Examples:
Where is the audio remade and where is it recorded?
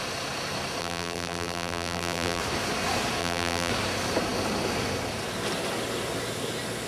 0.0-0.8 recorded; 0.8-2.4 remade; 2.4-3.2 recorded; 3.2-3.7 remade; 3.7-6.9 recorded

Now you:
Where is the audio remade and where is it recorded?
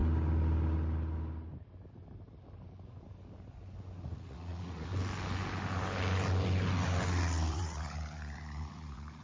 0.0-4.0 recorded; 4.0-4.9 remade; 4.9-7.5 recorded; 7.5-9.2 remade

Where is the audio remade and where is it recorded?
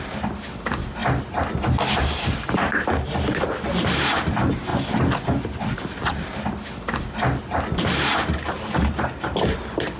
0.0-10.0 recorded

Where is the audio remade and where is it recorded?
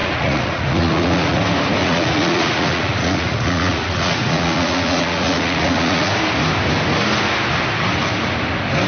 0.0-1.4 remade; 1.4-1.8 recorded; 1.8-6.1 remade; 6.1-8.9 recorded